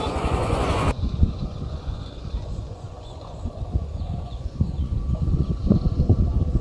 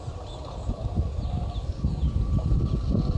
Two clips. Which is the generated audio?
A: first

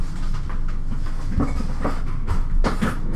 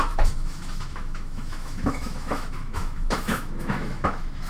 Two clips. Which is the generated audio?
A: second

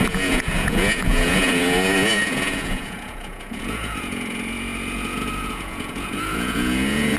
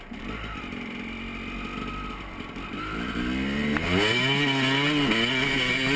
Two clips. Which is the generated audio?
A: first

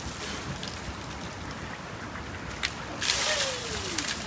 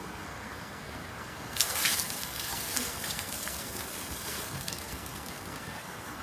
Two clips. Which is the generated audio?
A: second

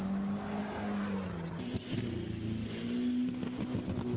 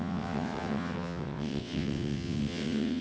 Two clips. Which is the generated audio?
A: second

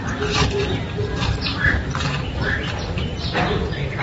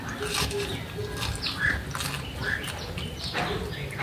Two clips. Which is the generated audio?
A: first